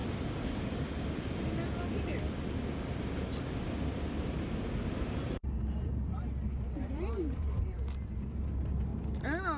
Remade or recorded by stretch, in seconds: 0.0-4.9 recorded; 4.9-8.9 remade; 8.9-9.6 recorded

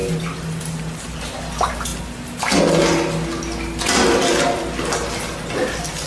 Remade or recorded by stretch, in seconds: 0.0-1.9 remade; 1.9-5.1 recorded; 5.1-6.1 remade

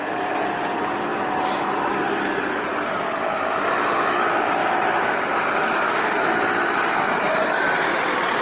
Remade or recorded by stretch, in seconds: 0.0-2.7 recorded; 2.7-3.6 remade; 3.6-4.6 recorded; 4.6-6.2 remade; 6.2-8.4 recorded

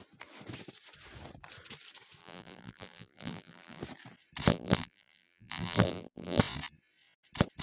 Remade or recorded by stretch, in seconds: 0.0-2.2 recorded; 2.2-3.8 remade; 3.8-4.5 recorded; 4.5-6.4 remade; 6.4-7.6 recorded